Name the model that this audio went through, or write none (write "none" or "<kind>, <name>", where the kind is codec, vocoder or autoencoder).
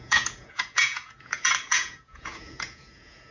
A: vocoder, Vocos